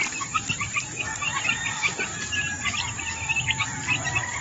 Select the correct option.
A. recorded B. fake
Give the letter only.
A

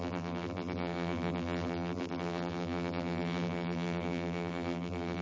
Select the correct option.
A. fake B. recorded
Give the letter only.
A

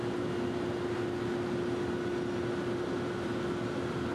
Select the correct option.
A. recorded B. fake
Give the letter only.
A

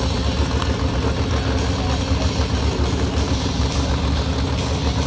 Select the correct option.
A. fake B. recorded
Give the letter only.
B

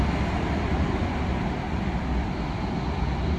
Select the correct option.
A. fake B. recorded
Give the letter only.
B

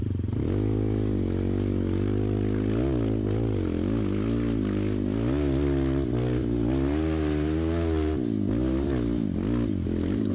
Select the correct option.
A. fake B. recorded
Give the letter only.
B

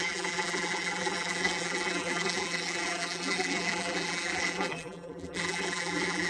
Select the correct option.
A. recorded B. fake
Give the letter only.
B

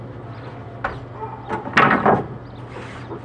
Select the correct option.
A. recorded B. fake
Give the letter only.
A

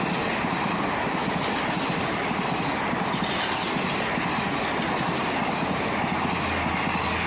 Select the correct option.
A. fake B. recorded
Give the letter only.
B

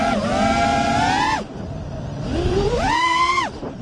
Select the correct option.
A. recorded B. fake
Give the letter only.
A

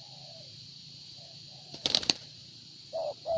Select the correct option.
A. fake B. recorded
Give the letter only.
A